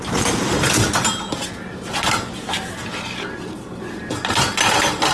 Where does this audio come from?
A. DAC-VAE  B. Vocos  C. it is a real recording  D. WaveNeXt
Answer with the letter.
C